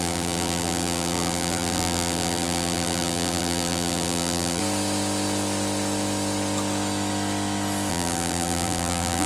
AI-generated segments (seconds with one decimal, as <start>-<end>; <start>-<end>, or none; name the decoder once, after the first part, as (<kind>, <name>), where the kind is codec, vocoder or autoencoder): 0.0-4.6 (vocoder, BigVGAN v2); 7.9-9.3

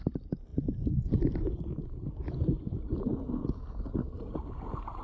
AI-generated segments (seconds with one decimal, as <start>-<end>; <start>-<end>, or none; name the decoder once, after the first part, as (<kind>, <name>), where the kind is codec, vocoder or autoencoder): 2.5-4.3 (vocoder, BigVGAN v2)

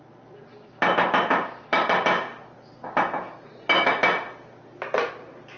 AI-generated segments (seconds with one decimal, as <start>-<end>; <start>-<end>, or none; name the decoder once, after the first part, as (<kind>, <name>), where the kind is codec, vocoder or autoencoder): none

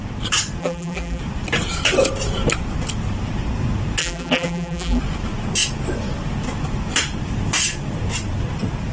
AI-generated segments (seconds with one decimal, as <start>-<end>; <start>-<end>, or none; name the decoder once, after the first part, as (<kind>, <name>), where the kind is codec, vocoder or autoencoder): 0.6-1.2 (vocoder, BigVGAN v2); 4.0-5.0

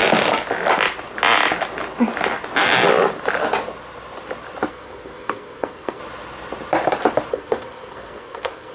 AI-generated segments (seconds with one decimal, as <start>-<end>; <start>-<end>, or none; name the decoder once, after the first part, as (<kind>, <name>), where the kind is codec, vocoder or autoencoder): 4.7-6.0 (codec, SNAC); 7.3-8.7

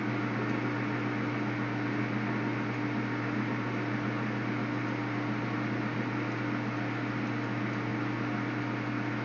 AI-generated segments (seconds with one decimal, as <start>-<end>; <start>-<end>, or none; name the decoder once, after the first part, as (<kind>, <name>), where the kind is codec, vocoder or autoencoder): none